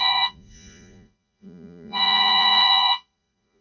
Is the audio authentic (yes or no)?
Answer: no